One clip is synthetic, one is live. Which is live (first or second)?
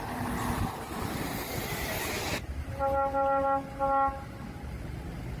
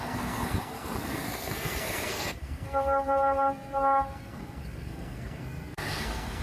first